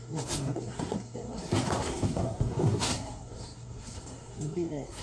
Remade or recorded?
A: remade